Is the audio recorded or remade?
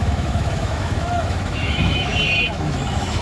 remade